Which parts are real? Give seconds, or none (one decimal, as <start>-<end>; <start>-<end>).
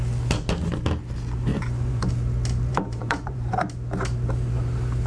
0.0-1.5; 2.1-2.7; 3.5-5.1